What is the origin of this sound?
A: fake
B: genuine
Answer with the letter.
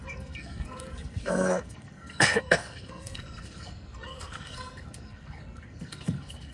A